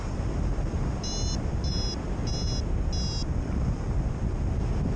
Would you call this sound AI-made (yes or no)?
no